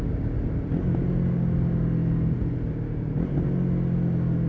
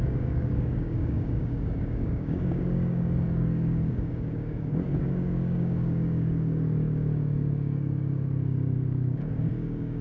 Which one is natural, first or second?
first